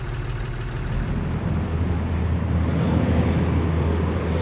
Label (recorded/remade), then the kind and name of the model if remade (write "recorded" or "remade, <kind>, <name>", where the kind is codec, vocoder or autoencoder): recorded